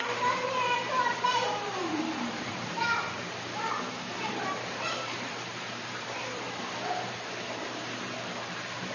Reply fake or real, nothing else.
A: fake